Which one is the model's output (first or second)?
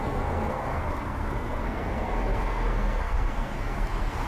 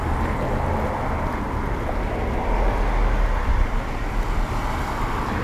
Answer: first